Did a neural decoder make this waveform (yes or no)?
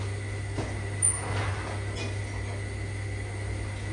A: no